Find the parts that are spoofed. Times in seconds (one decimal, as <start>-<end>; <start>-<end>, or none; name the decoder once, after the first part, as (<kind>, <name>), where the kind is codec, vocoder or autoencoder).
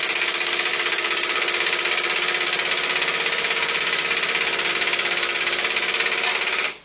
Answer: none